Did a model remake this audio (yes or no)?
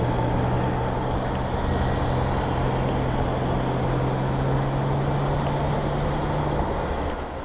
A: no